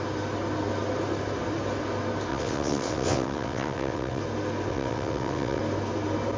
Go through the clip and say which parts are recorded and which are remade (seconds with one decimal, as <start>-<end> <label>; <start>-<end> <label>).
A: 0.0-2.3 recorded; 2.3-4.2 remade; 4.2-4.7 recorded; 4.7-5.6 remade; 5.6-6.4 recorded